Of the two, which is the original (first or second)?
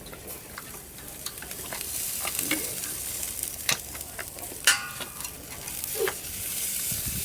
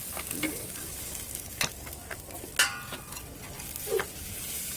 second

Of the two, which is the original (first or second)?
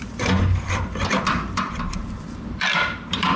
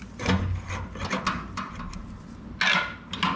second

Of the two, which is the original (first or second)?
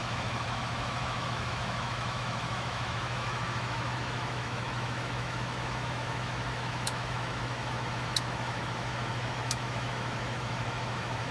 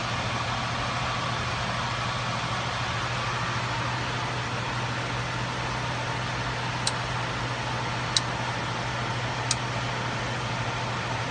second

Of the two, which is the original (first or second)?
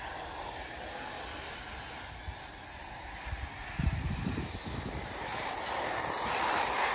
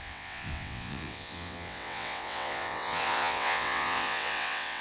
first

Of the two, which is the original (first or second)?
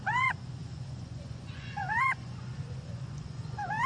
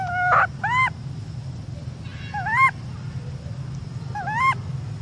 second